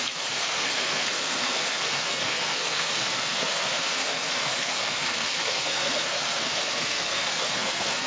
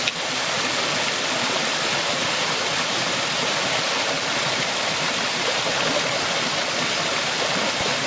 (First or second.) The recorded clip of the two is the second